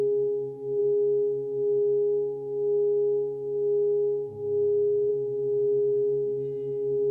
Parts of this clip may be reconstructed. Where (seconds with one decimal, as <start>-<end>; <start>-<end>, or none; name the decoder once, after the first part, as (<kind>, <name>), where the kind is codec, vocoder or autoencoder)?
none